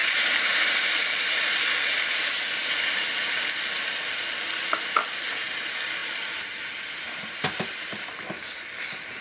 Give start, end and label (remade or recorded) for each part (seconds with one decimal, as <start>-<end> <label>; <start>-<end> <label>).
0.0-1.7 remade; 1.7-6.0 recorded; 6.0-8.0 remade; 8.0-9.2 recorded